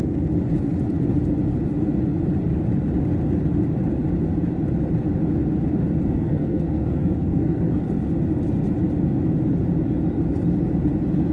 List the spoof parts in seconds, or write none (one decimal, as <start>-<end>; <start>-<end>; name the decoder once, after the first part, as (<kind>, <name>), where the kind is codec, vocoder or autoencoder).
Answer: 6.0-7.8 (codec, SNAC)